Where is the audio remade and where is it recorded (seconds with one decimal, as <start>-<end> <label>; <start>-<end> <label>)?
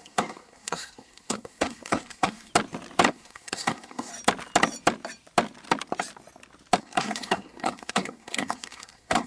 0.0-2.5 remade; 2.5-3.1 recorded; 3.1-4.1 remade; 4.1-6.8 recorded; 6.8-9.3 remade